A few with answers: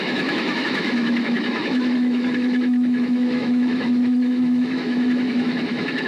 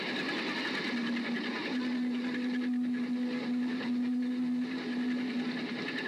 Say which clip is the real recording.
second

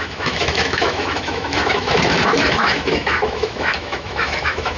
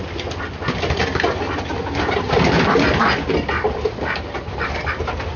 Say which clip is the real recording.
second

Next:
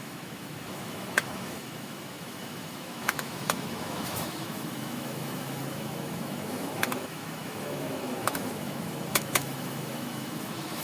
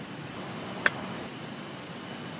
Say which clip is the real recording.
second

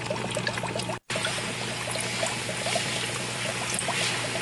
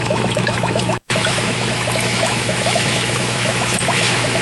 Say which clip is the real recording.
first